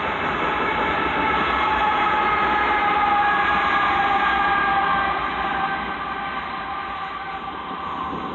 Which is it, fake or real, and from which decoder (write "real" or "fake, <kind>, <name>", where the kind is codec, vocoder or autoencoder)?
real